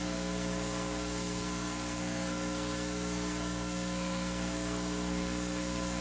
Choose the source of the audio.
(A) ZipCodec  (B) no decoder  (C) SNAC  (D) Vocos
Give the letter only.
C